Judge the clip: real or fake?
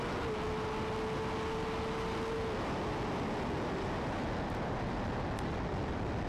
real